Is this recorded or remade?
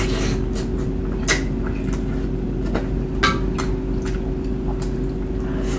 recorded